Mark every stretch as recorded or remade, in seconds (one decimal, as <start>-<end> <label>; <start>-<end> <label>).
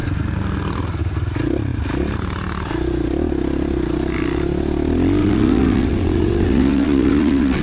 0.0-5.2 recorded; 5.2-7.6 remade